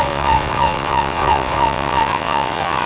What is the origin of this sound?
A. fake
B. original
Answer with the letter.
A